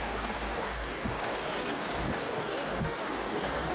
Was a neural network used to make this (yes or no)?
yes